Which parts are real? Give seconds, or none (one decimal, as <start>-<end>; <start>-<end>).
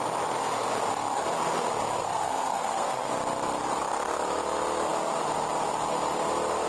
0.0-2.0; 3.1-6.7